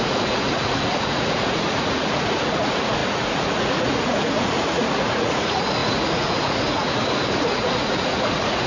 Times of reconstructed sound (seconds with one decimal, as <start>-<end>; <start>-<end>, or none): 0.0-8.7